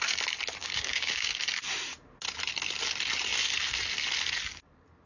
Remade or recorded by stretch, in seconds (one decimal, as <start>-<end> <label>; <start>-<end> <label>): 0.0-0.6 recorded; 0.6-1.3 remade; 1.3-5.1 recorded